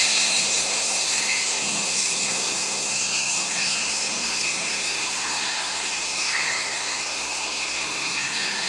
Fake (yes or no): yes